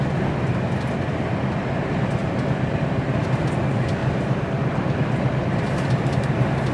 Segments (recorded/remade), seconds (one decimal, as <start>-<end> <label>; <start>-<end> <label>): 0.0-2.2 recorded; 2.2-3.4 remade; 3.4-4.0 recorded; 4.0-5.9 remade; 5.9-6.7 recorded